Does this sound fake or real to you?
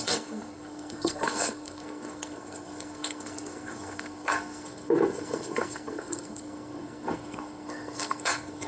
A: fake